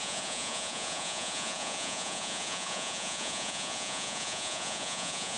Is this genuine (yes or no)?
no